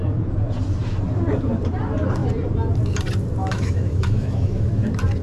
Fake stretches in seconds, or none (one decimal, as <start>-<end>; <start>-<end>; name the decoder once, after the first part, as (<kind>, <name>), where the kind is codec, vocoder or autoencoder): 3.4-4.7 (autoencoder, DAC-VAE)